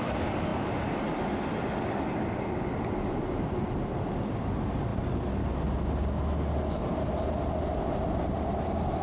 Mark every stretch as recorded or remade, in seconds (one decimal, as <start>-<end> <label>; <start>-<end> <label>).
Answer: 0.0-9.0 recorded